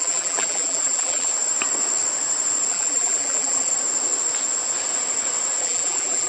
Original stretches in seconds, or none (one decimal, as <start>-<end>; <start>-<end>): 1.3-2.7; 3.7-5.6